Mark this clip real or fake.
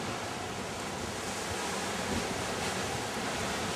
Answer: real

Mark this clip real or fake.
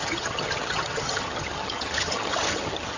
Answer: fake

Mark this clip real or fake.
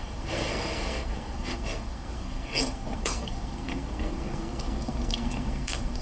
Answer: fake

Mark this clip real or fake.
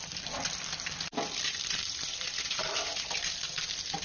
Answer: fake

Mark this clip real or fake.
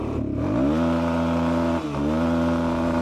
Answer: real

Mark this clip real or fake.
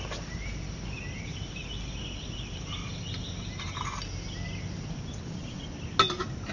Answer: real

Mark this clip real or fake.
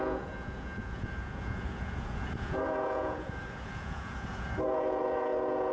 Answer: fake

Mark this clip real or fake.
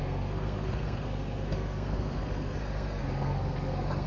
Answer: fake